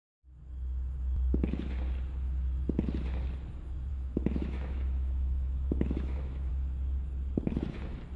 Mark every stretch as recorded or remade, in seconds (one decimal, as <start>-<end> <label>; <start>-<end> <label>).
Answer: 0.0-3.9 recorded; 3.9-6.5 remade; 6.5-8.2 recorded